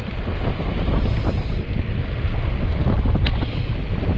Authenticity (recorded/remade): recorded